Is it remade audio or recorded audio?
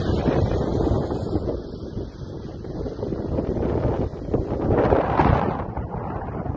recorded